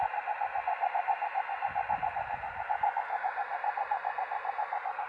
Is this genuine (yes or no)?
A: yes